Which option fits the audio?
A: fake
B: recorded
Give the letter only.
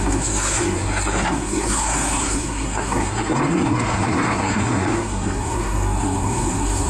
A